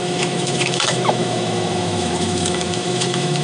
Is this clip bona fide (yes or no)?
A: no